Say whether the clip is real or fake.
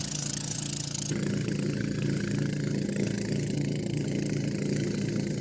fake